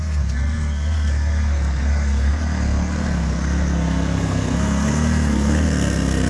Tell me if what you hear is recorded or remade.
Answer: remade